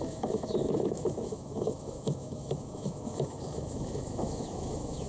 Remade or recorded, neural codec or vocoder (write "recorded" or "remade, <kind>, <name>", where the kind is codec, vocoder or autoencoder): remade, autoencoder, DAC-VAE